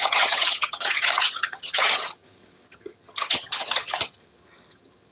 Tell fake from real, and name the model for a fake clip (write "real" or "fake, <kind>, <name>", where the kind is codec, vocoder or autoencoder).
fake, vocoder, HiFi-GAN